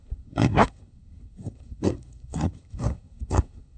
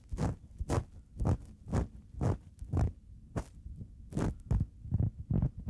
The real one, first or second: second